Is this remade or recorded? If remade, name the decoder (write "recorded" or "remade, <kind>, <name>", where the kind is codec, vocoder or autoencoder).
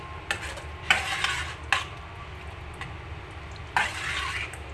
recorded